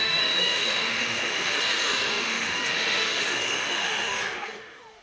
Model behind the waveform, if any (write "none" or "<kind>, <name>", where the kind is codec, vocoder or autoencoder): autoencoder, DAC-VAE